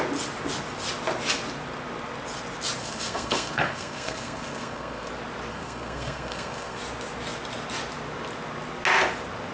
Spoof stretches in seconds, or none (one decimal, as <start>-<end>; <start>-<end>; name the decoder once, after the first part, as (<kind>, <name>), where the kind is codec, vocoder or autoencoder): 2.8-5.1 (codec, SNAC); 5.5-6.8